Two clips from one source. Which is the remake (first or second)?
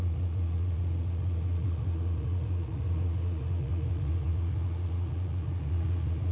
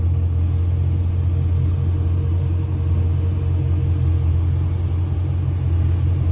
first